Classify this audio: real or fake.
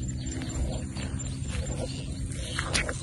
real